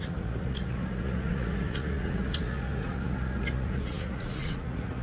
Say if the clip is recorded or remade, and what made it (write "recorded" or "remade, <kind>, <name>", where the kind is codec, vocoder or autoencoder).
remade, vocoder, Vocos